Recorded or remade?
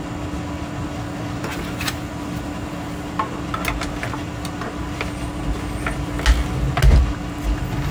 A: recorded